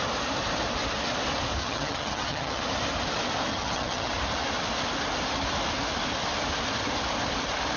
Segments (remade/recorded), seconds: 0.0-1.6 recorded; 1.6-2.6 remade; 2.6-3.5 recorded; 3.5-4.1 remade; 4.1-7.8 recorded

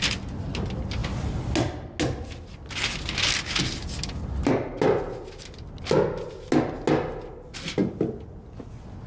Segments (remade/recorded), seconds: 0.0-9.1 recorded

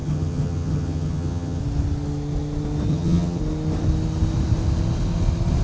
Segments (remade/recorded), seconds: 0.0-1.6 remade; 1.6-2.9 recorded; 2.9-3.4 remade; 3.4-5.6 recorded